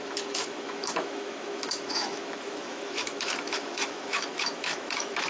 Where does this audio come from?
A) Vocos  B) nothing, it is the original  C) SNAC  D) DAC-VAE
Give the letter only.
D